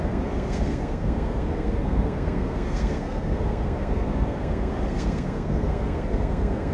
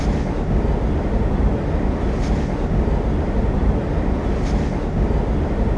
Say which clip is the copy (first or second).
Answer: first